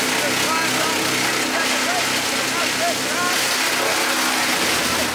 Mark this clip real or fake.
real